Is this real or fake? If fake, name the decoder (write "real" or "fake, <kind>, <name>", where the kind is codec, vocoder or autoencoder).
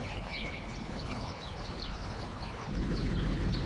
fake, codec, HILCodec